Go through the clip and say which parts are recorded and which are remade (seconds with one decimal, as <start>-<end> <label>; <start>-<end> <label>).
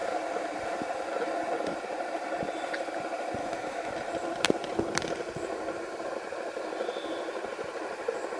0.0-3.4 recorded; 3.4-3.9 remade; 3.9-8.4 recorded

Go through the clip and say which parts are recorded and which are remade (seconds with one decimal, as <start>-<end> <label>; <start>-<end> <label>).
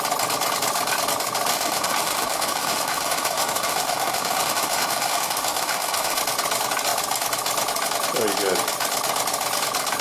0.0-1.5 recorded; 1.5-6.2 remade; 6.2-10.0 recorded